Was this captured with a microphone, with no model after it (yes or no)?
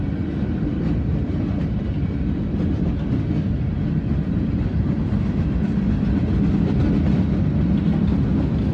yes